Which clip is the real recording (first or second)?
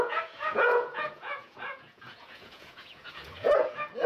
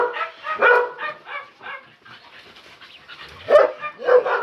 second